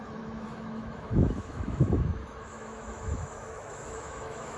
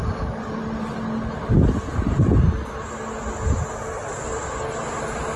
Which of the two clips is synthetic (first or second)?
first